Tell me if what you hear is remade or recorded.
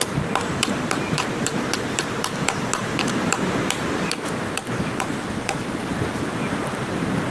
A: remade